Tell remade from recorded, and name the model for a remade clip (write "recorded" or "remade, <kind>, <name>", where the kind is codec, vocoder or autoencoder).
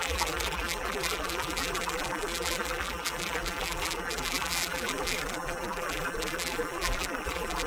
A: remade, vocoder, BigVGAN v2